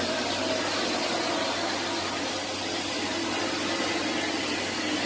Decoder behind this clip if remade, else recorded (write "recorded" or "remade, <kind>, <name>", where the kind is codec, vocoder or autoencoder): recorded